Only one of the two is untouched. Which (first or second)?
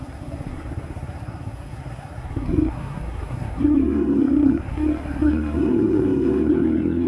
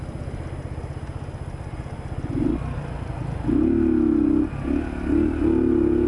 second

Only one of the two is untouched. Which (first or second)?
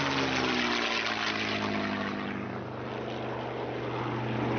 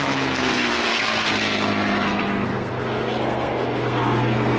first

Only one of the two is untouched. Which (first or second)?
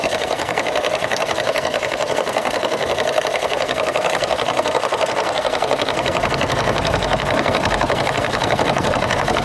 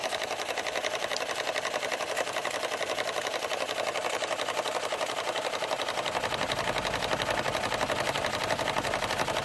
second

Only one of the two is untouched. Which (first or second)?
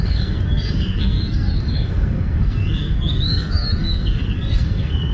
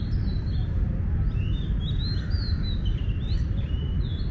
second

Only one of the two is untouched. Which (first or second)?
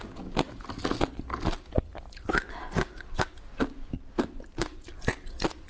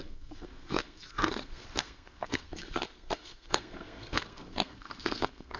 first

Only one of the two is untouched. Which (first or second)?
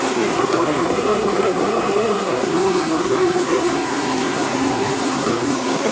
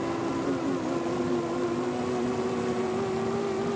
second